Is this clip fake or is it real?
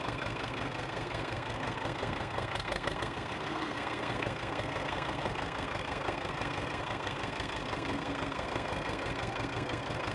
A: fake